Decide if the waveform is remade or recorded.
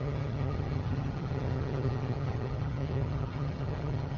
remade